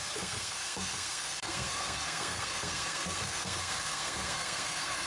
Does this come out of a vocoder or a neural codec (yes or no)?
yes